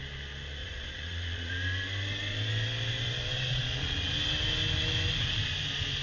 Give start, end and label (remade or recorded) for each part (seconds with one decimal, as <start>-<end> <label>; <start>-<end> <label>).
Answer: 0.0-0.6 recorded; 0.6-1.5 remade; 1.5-3.5 recorded; 3.5-4.1 remade; 4.1-6.0 recorded

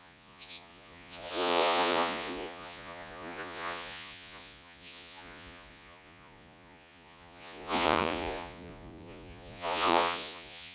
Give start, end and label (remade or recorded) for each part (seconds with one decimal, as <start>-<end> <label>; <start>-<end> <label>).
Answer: 0.0-10.7 remade

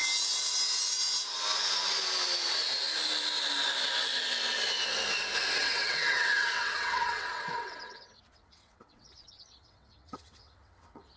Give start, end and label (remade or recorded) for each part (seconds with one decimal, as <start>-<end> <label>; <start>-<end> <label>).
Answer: 0.0-5.6 recorded; 5.6-11.2 remade

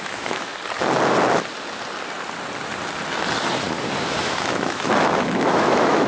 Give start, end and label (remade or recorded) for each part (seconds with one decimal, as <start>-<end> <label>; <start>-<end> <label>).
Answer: 0.0-0.5 remade; 0.5-4.2 recorded; 4.2-6.1 remade

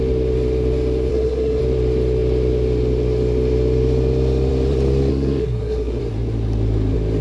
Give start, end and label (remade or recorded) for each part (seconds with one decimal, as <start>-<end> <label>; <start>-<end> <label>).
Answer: 0.0-1.1 recorded; 1.1-1.6 remade; 1.6-5.1 recorded; 5.1-6.0 remade; 6.0-7.2 recorded

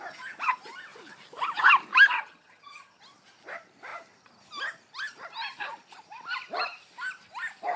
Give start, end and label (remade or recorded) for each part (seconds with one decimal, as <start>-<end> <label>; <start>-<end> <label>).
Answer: 0.0-2.1 recorded; 2.1-3.0 remade; 3.0-7.8 recorded

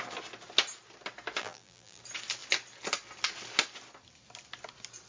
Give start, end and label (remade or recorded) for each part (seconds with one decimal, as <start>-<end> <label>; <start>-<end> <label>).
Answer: 0.0-1.4 recorded; 1.4-2.0 remade; 2.0-5.1 recorded